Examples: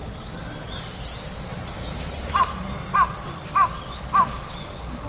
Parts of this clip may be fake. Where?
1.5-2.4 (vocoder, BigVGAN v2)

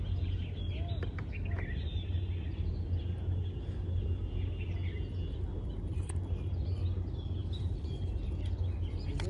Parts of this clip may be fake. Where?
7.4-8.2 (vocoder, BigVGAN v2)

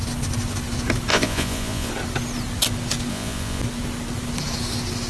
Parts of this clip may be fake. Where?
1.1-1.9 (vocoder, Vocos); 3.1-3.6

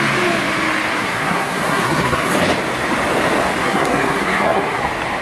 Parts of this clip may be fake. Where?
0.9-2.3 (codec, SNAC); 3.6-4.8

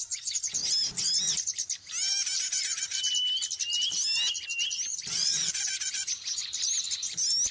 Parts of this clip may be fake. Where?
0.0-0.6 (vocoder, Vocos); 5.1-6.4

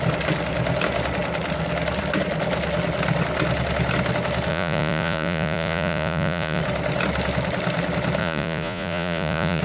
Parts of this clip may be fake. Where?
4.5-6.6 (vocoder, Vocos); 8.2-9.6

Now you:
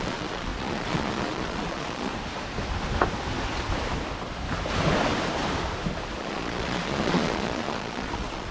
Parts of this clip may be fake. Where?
0.0-2.1 (vocoder, Vocos); 6.2-8.5

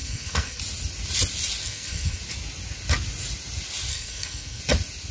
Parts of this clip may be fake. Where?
0.0-0.6 (codec, SNAC); 1.6-2.2; 3.9-4.6